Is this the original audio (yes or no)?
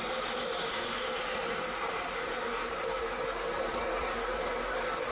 yes